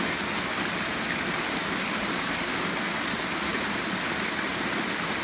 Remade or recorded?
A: recorded